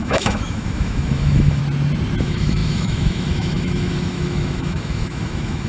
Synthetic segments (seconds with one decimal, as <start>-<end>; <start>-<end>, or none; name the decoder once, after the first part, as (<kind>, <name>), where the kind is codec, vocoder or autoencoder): 0.0-1.6 (autoencoder, DAC-VAE); 2.2-5.7